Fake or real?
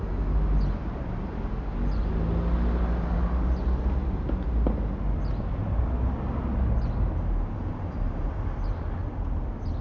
real